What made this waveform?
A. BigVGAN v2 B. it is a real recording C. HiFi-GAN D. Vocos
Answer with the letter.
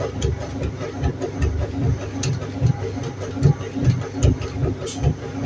B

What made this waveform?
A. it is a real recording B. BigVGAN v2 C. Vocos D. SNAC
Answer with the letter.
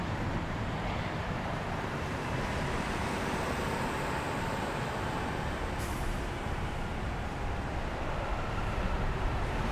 B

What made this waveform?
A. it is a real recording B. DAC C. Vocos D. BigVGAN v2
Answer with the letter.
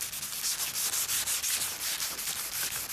A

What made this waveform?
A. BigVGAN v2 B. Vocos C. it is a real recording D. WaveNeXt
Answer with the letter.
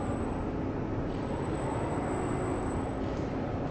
C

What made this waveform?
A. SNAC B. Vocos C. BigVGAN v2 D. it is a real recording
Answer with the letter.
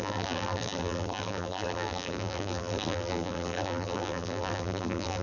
C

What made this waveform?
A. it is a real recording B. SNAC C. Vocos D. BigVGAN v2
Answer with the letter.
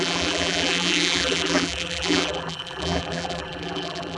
D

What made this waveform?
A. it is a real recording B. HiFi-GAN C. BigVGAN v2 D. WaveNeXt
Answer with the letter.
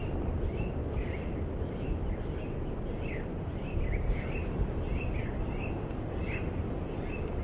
A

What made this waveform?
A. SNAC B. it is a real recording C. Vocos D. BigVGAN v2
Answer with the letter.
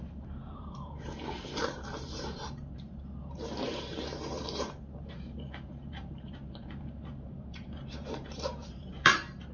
D